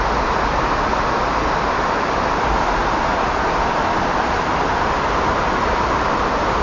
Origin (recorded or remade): recorded